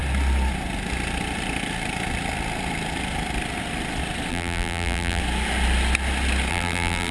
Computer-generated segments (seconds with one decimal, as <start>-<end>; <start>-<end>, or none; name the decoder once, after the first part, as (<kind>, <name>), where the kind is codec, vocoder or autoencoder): 4.3-5.2 (vocoder, BigVGAN v2); 6.5-7.1